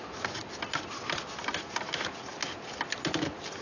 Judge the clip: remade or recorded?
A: recorded